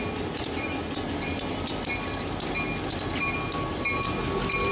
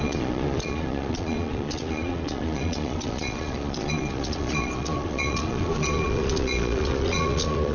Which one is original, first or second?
first